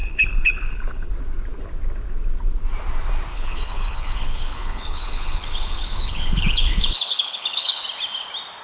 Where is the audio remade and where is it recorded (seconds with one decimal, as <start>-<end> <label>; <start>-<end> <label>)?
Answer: 0.0-1.1 remade; 1.1-3.3 recorded; 3.3-7.8 remade; 7.8-8.6 recorded